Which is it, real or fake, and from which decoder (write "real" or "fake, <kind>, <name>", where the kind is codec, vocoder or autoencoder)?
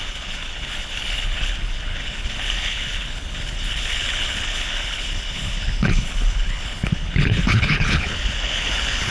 fake, codec, HILCodec